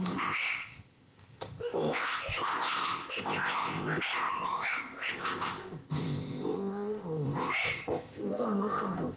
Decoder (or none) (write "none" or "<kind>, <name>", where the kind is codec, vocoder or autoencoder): codec, ZipCodec